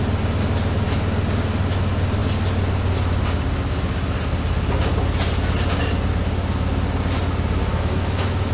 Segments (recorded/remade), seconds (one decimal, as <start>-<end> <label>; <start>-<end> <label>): 0.0-7.7 recorded; 7.7-8.5 remade